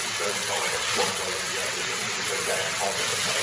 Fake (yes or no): yes